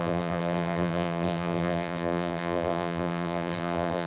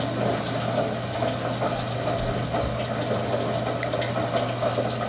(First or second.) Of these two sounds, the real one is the second